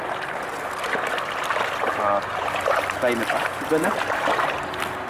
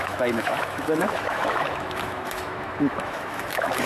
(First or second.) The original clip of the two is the first